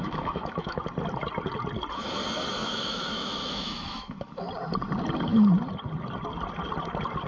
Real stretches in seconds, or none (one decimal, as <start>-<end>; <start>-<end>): 0.8-2.6; 4.5-7.3